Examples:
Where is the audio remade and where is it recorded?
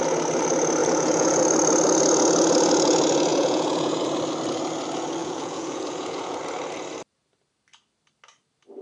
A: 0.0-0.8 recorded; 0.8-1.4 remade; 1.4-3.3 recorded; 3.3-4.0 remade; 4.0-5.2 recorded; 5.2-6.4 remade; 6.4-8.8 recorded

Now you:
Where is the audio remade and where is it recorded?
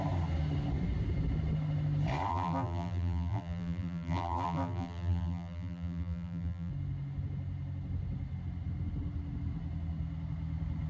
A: 0.0-2.3 recorded; 2.3-6.7 remade; 6.7-10.9 recorded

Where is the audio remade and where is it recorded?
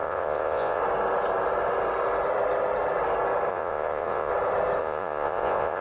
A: 0.0-0.8 remade; 0.8-3.5 recorded; 3.5-4.3 remade; 4.3-4.8 recorded; 4.8-5.8 remade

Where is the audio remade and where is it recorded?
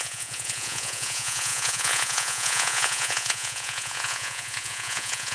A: 0.0-5.3 remade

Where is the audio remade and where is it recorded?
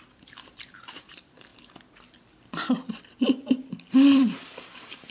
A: 0.0-1.5 remade; 1.5-4.6 recorded; 4.6-5.1 remade